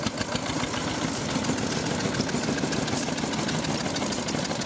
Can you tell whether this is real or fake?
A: real